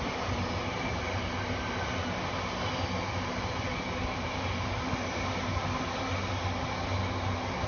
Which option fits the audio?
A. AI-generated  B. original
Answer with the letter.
B